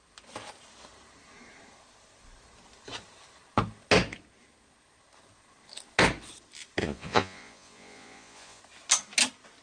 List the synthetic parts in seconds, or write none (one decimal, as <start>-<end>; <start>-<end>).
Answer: 6.8-8.6